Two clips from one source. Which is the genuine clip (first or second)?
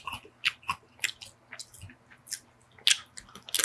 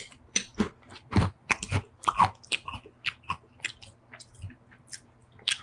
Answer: first